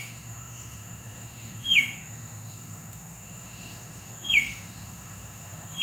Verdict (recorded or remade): remade